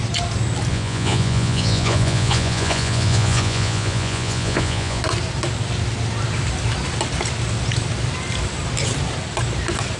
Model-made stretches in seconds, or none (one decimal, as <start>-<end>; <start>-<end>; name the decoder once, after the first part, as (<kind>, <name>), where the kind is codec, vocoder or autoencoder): 0.7-5.0 (vocoder, Vocos)